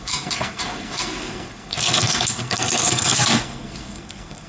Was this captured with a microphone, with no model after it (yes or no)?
no